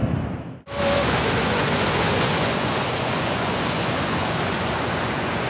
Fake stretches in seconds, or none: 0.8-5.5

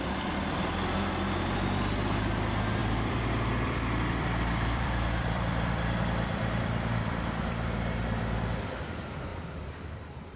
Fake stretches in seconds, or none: 2.8-7.5; 9.3-10.4

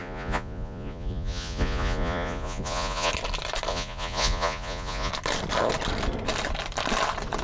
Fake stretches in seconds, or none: 0.0-3.1; 3.7-5.1

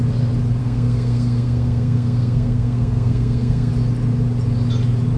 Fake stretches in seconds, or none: 0.6-3.7

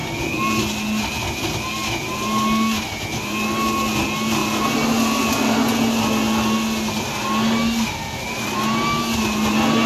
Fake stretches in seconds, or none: none